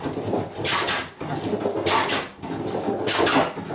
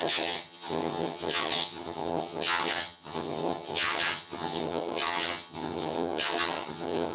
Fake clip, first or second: second